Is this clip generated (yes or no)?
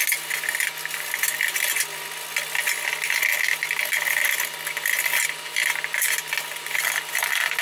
no